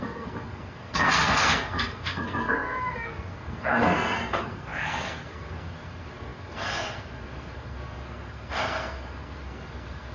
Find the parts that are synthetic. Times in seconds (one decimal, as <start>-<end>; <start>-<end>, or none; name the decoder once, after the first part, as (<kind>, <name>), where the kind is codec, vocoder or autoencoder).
0.0-10.1 (codec, SNAC)